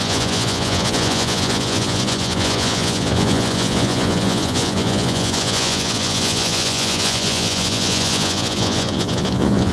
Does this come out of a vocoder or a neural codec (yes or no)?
yes